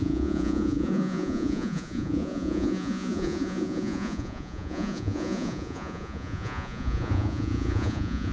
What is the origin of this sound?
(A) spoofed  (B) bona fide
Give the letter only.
A